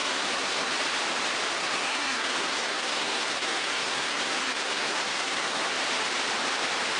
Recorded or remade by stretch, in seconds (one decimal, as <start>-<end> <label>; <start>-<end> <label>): 0.0-0.7 remade; 0.7-1.5 recorded; 1.5-5.7 remade; 5.7-7.0 recorded